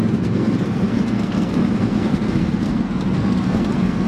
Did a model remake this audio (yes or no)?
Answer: yes